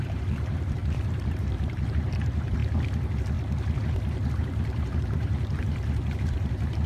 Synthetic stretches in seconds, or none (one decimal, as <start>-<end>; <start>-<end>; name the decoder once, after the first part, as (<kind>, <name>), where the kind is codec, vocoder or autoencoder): 0.0-2.6 (vocoder, BigVGAN v2); 4.4-6.9